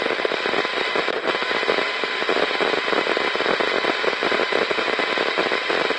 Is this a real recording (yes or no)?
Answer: yes